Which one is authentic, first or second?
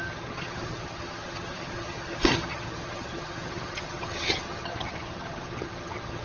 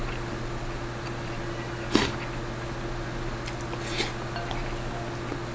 second